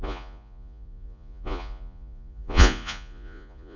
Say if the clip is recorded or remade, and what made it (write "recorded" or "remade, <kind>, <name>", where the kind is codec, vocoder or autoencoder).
remade, vocoder, Vocos